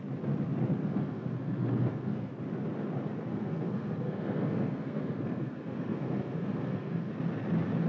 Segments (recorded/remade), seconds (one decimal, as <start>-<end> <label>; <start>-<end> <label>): 0.0-0.8 recorded; 0.8-2.3 remade; 2.3-3.3 recorded; 3.3-7.1 remade; 7.1-7.9 recorded